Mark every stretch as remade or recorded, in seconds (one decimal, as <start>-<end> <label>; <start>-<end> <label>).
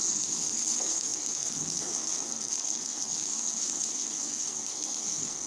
0.0-5.5 remade